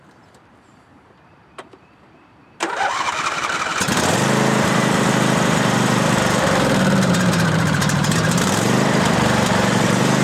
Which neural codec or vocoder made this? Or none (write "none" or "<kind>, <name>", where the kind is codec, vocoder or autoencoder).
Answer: vocoder, BigVGAN v2